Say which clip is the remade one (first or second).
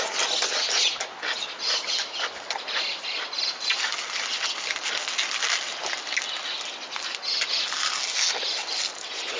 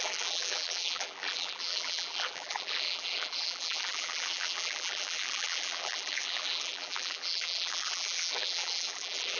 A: second